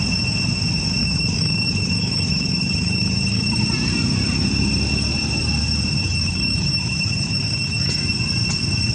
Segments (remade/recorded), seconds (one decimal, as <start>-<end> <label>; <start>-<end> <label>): 0.0-1.0 recorded; 1.0-3.6 remade; 3.6-6.0 recorded; 6.0-7.9 remade; 7.9-8.9 recorded